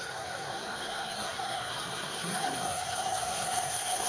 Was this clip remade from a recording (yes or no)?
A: yes